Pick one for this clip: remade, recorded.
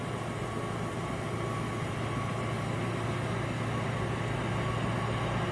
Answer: recorded